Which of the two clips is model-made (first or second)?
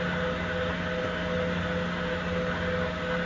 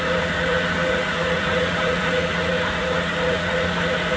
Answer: second